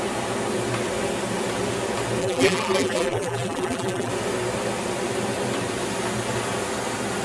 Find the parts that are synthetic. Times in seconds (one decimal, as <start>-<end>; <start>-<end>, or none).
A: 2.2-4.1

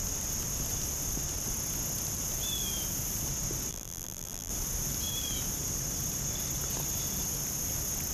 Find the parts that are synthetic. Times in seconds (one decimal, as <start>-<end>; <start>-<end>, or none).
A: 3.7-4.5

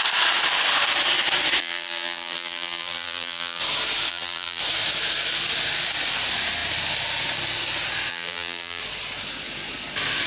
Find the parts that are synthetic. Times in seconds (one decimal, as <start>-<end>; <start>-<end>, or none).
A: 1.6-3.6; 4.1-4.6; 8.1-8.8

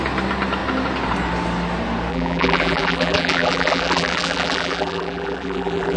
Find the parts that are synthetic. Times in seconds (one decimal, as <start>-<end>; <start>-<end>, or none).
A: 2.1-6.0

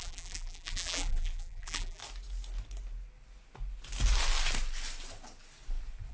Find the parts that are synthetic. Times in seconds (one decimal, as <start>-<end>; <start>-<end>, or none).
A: 0.0-2.0